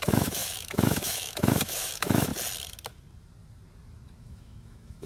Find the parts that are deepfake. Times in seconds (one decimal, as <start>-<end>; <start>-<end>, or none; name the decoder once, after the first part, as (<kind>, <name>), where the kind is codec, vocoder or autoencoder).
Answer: 0.0-2.3 (autoencoder, DAC-VAE); 4.2-5.1